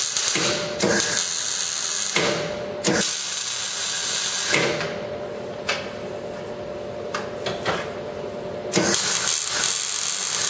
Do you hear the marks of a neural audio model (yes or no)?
no